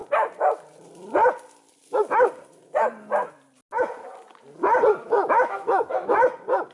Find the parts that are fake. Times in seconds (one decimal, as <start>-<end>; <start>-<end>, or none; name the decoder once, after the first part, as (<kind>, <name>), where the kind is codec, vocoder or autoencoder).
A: 5.0-6.1 (autoencoder, DAC-VAE)